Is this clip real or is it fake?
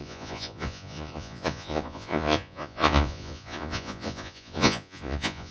fake